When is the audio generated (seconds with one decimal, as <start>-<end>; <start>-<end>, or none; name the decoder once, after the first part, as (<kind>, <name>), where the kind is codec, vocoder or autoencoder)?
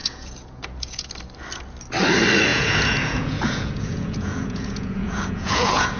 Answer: 0.0-1.1 (vocoder, Vocos); 2.5-6.0